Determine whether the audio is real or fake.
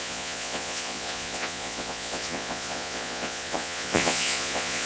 fake